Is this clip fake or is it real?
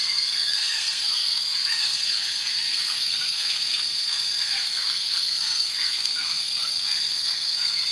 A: fake